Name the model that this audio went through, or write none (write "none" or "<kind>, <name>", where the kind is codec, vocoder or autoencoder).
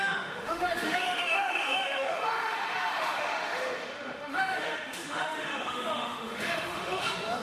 autoencoder, DAC-VAE